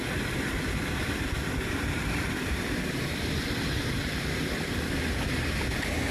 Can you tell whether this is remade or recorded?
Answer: recorded